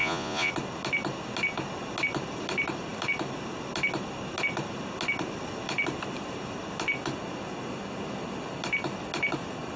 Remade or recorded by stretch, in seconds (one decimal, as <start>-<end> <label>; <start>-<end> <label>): 0.0-0.5 remade; 0.5-9.8 recorded